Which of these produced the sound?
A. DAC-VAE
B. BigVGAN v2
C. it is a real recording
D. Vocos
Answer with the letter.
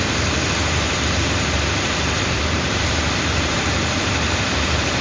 B